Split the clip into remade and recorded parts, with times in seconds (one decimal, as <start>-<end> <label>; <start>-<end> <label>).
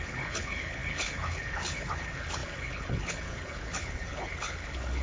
0.0-5.0 remade